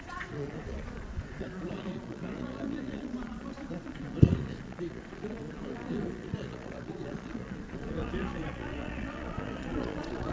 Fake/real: fake